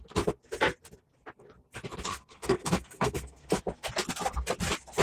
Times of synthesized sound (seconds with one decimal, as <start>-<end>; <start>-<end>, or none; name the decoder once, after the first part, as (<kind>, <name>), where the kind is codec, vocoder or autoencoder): 2.1-3.6 (codec, SNAC)